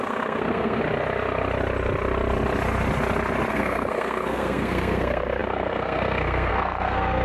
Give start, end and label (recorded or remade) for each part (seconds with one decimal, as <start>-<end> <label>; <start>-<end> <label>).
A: 0.0-0.8 remade; 0.8-3.5 recorded; 3.5-7.2 remade